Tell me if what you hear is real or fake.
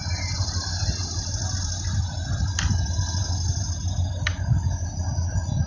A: real